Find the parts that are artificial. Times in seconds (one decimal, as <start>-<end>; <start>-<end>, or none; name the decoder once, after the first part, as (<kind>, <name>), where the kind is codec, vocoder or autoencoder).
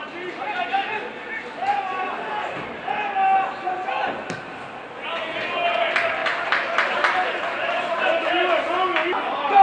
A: 6.2-8.3 (vocoder, BigVGAN v2)